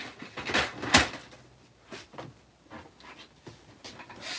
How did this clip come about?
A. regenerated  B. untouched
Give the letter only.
B